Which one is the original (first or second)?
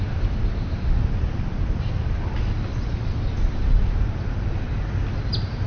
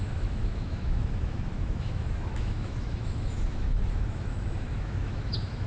first